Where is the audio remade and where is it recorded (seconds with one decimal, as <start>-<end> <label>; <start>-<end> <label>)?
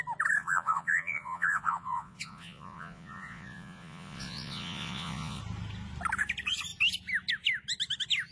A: 0.0-0.4 recorded; 0.4-5.4 remade; 5.4-8.3 recorded